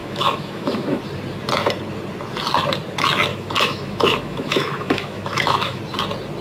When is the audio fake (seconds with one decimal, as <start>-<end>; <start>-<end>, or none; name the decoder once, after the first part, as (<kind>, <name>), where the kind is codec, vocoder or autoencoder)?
0.0-1.0 (autoencoder, DAC-VAE); 3.3-5.8